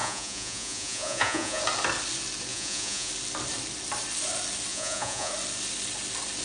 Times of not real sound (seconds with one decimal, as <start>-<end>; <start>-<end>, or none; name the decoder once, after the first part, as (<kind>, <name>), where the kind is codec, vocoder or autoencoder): 0.0-1.6 (vocoder, Vocos); 2.5-3.1; 4.7-5.3